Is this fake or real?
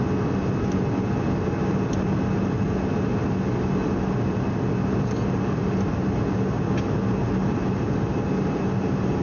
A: real